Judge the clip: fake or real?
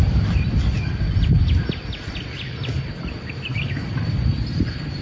real